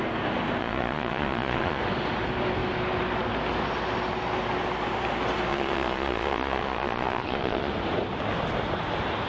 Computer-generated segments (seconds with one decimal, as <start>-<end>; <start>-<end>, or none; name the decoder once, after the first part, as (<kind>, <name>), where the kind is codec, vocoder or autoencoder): 0.6-1.8 (vocoder, Vocos); 5.5-7.7